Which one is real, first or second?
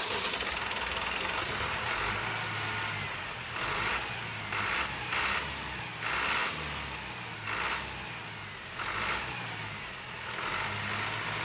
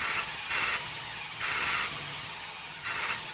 first